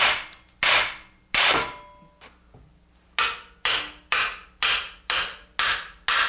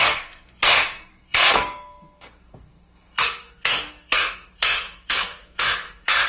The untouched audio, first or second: first